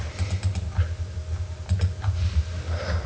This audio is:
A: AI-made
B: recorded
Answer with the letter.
B